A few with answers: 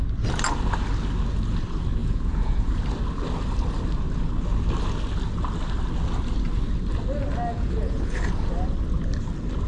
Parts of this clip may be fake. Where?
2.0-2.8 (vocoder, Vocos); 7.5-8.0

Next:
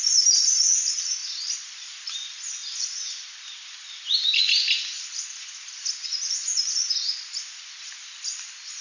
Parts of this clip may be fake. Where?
none